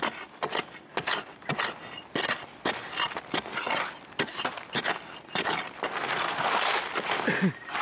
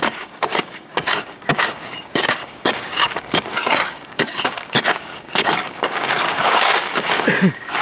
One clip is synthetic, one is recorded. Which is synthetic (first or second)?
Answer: second